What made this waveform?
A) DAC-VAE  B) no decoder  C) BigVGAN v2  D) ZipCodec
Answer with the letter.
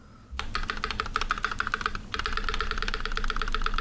B